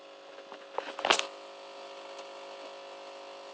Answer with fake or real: real